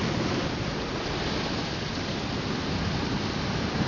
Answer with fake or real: real